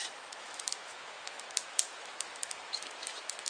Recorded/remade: remade